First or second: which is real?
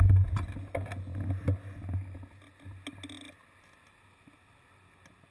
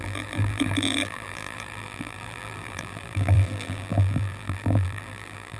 first